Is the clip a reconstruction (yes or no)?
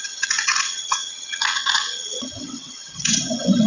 yes